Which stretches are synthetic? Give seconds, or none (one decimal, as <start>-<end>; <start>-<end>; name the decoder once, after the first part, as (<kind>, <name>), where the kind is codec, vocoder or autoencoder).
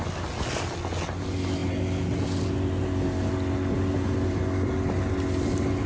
none